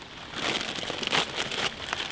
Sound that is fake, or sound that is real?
real